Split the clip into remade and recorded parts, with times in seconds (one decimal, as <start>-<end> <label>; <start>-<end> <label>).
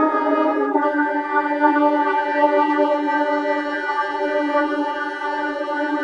0.0-6.0 remade